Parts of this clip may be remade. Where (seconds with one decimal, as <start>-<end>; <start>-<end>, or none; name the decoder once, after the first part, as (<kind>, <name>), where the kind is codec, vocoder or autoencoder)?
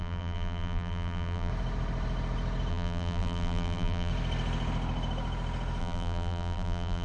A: 0.0-1.5 (vocoder, BigVGAN v2); 2.7-4.1; 5.8-7.0